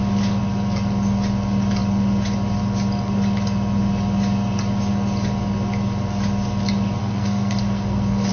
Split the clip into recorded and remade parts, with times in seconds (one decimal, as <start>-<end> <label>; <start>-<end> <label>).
0.0-7.0 recorded; 7.0-8.3 remade